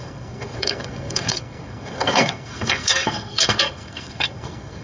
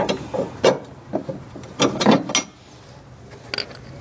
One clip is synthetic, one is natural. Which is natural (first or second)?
second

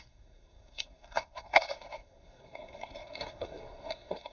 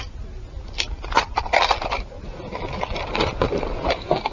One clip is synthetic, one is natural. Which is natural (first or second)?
second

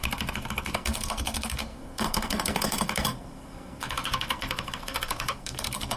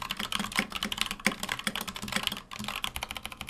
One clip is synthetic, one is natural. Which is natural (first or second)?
second